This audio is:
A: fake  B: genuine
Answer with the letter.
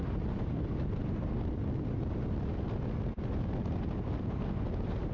B